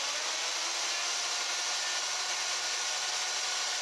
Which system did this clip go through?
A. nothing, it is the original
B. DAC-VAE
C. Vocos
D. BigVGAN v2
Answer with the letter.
A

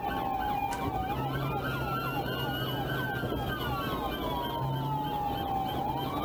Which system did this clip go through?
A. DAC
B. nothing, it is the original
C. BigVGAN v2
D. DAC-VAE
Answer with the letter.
B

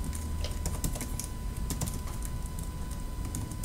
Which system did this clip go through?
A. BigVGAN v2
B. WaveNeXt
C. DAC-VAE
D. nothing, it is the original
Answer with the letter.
D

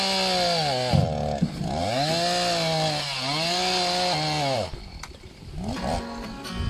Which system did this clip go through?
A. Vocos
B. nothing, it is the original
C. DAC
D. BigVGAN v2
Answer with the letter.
B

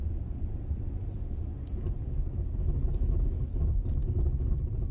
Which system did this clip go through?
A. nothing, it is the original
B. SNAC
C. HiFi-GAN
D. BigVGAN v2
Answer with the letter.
A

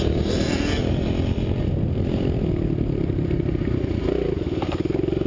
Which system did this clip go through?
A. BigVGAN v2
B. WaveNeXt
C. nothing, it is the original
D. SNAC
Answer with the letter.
C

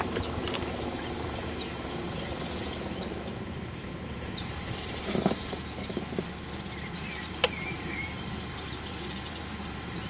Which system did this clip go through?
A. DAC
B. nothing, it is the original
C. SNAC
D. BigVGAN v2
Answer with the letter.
D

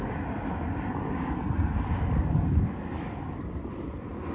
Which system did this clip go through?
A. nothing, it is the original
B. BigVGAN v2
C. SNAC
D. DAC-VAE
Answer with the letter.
A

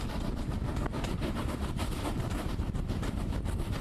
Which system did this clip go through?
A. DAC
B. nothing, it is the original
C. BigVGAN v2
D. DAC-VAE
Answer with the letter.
C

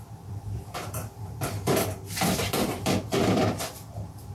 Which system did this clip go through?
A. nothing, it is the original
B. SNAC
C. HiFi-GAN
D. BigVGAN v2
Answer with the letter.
D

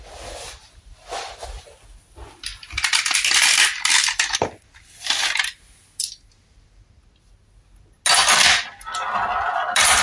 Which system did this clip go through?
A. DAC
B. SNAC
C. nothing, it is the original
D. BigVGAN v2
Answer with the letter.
C